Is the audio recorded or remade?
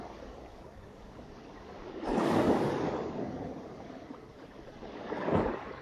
remade